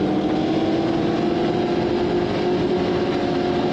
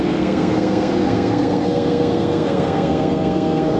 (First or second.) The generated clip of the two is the second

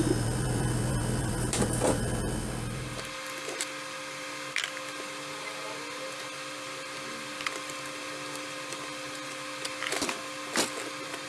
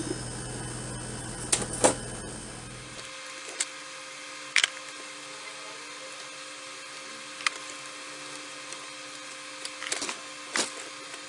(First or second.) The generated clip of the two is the first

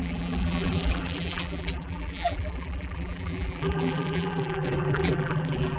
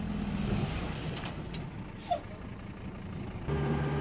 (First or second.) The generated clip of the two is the first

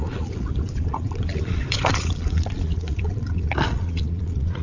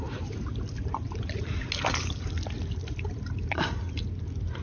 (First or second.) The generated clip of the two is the first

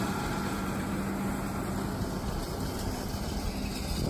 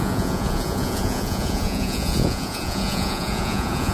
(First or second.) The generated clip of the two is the second